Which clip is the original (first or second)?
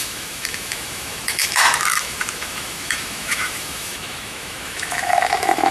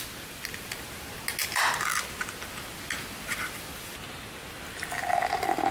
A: second